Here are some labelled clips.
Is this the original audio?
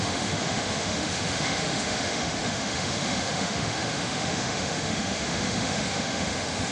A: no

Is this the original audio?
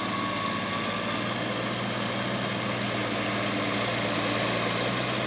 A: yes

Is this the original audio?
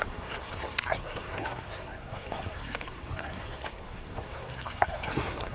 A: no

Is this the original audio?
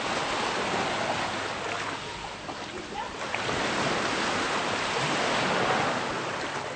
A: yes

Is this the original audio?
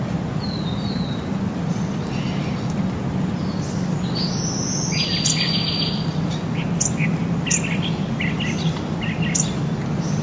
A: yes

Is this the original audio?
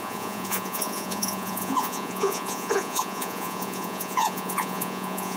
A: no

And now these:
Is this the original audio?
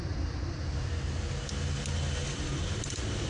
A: yes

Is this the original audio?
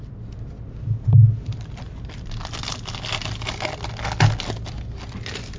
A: yes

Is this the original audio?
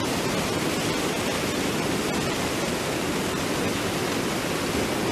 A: yes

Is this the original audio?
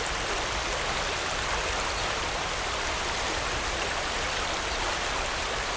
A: yes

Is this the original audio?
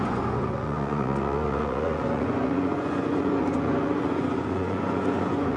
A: no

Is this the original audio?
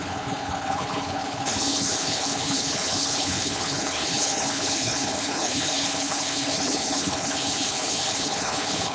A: no